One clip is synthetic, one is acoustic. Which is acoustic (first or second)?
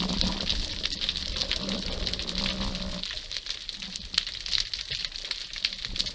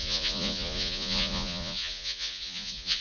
first